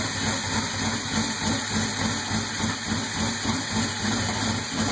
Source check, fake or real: real